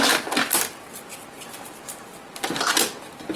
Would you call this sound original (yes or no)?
yes